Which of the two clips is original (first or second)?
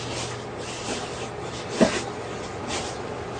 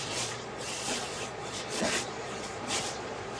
first